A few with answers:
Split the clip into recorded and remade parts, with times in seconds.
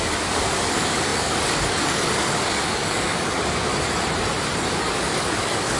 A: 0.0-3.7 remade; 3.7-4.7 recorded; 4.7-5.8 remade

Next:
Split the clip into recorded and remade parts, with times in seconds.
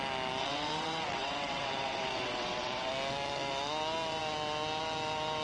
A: 0.0-0.4 recorded; 0.4-2.9 remade; 2.9-5.4 recorded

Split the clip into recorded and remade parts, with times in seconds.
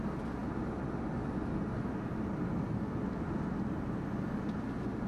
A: 0.0-5.1 recorded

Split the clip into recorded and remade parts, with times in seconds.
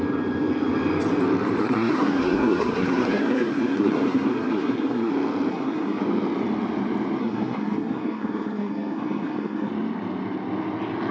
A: 0.0-1.6 recorded; 1.6-5.1 remade; 5.1-5.5 recorded; 5.5-6.0 remade; 6.0-7.2 recorded; 7.2-9.7 remade; 9.7-11.1 recorded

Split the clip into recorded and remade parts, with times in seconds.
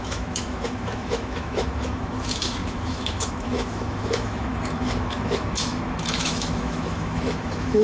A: 0.0-7.8 remade